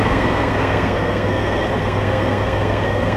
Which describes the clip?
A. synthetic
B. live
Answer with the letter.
A